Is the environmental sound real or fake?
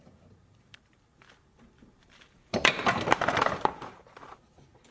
fake